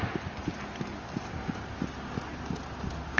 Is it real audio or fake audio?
real